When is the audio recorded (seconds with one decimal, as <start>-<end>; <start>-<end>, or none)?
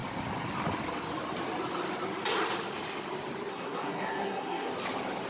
0.0-3.5; 4.7-5.3